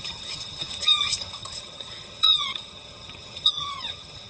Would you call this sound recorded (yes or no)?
no